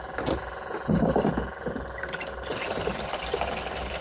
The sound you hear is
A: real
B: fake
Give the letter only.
A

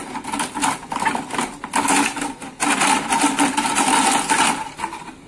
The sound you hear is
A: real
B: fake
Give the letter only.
A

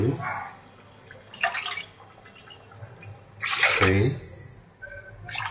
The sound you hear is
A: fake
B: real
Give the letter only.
B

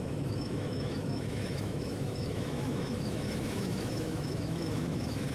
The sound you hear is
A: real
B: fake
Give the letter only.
B